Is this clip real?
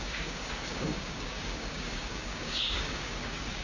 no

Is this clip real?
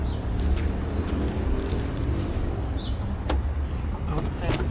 yes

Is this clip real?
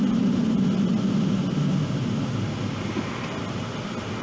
yes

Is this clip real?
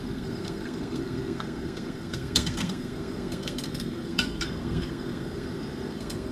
no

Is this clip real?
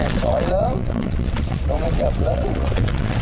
no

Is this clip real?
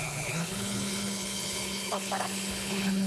no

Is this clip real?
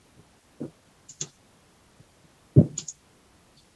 yes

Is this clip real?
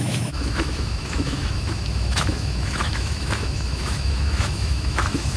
no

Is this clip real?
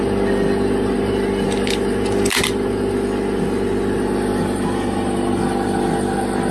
yes